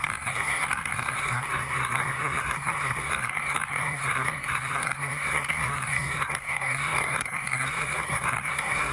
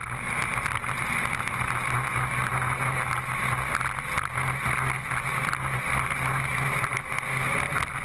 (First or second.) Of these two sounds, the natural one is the second